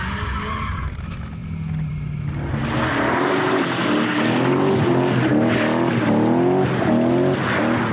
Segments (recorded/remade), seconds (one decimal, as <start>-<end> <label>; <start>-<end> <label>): 0.0-7.9 recorded